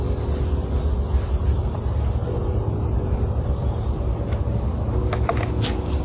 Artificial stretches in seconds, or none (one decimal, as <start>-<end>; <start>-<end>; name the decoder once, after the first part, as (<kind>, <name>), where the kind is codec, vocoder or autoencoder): 2.2-3.7 (vocoder, BigVGAN v2)